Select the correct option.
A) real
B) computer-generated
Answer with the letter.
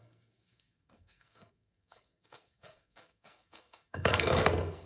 B